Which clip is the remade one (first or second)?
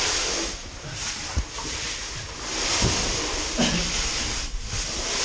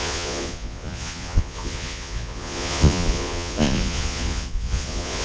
second